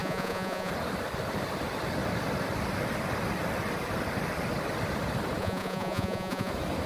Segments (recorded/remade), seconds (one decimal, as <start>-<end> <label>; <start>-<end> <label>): 0.0-0.7 remade; 0.7-5.4 recorded; 5.4-6.5 remade; 6.5-6.9 recorded